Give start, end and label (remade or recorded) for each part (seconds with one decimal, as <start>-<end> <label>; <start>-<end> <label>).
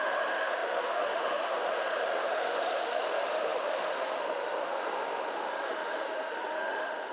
0.0-7.1 remade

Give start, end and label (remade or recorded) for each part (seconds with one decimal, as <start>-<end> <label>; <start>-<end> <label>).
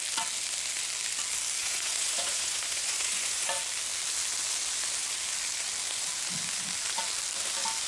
0.0-1.6 recorded; 1.6-3.5 remade; 3.5-7.9 recorded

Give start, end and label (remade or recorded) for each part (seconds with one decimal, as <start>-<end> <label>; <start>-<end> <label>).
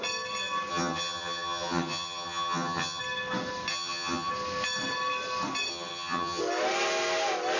0.0-0.7 recorded; 0.7-3.0 remade; 3.0-3.7 recorded; 3.7-4.3 remade; 4.3-5.7 recorded; 5.7-6.4 remade; 6.4-7.6 recorded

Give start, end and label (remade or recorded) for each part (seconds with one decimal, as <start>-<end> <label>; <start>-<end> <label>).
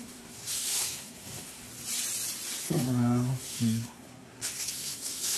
0.0-1.7 remade; 1.7-2.6 recorded; 2.6-5.4 remade